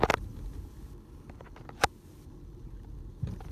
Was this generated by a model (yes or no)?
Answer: no